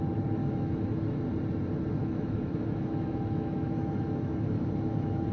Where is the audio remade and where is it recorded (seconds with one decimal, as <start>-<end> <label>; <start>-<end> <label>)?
0.0-0.4 recorded; 0.4-1.2 remade; 1.2-2.0 recorded; 2.0-5.3 remade